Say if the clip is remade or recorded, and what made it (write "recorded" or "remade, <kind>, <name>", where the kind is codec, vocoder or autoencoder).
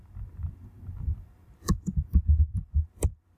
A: remade, vocoder, BigVGAN v2